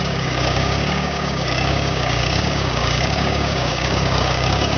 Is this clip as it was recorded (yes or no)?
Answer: no